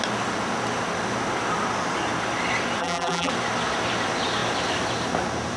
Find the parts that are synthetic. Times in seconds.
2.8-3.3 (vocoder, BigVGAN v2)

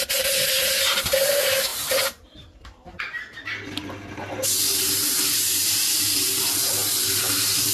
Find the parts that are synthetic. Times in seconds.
0.0-7.7 (vocoder, BigVGAN v2)

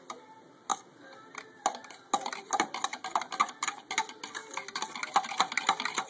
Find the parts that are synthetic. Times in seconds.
none